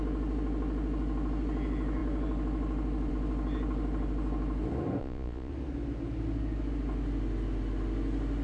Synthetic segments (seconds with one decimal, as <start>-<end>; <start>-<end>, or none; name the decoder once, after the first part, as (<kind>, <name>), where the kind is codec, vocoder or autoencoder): 5.0-5.5 (vocoder, Vocos)

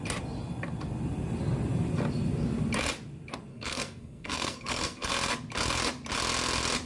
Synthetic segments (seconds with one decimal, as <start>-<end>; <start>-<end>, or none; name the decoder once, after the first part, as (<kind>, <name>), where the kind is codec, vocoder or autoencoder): 3.5-5.1 (codec, SNAC)

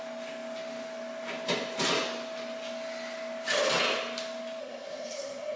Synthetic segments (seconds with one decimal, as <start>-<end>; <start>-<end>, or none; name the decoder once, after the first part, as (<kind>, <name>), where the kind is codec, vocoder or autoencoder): 4.6-5.6 (codec, SNAC)

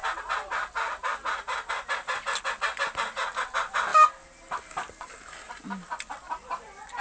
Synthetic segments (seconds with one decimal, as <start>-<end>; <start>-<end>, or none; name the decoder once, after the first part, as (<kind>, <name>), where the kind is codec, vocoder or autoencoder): none